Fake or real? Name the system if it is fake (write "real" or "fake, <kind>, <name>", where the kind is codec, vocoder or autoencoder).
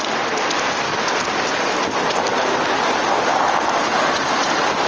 real